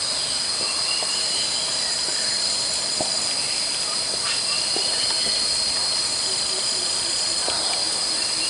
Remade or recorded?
recorded